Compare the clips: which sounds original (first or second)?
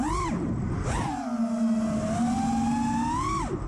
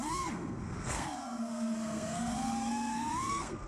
first